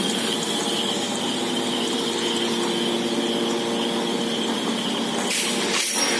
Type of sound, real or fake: real